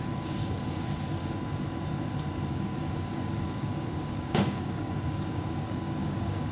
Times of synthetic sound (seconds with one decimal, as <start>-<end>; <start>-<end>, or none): 0.0-0.4; 2.5-6.5